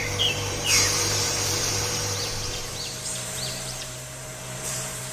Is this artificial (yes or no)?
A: yes